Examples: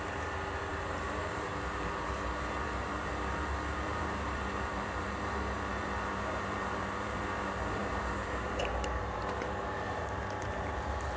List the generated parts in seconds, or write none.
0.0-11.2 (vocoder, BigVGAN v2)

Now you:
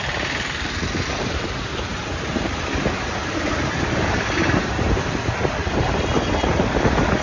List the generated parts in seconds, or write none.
1.9-2.6 (vocoder, BigVGAN v2)

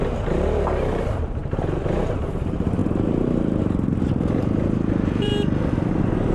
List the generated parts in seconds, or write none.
0.0-5.3 (vocoder, BigVGAN v2)

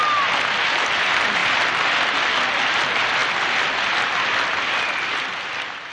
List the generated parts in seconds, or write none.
none

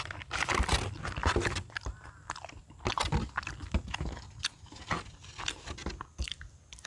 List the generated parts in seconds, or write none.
none

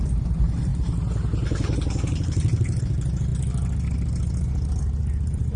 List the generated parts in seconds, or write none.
none

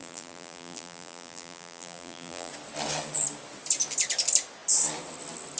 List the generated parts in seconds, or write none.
0.0-2.5 (vocoder, BigVGAN v2)

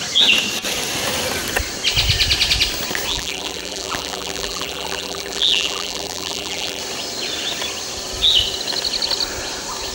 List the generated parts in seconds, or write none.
3.1-6.8 (vocoder, BigVGAN v2)